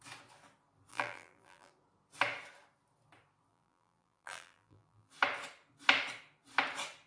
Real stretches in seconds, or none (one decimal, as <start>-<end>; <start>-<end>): 0.0-0.9; 1.7-3.5; 5.1-7.1